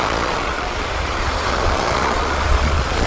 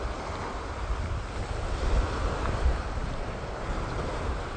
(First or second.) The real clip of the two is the second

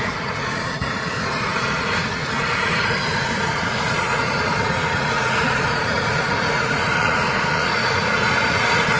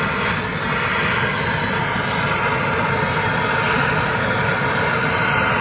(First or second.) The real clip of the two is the second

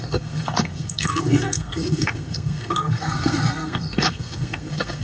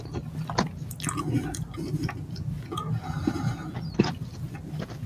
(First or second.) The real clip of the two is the second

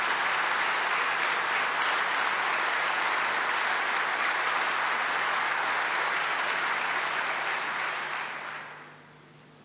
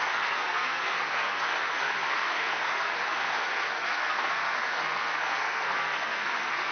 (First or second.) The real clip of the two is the first